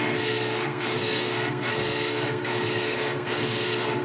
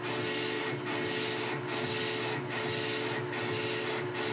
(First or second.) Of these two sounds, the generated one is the first